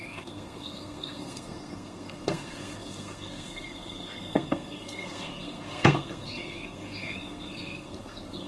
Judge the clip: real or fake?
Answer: fake